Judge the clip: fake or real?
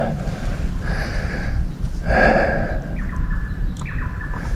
real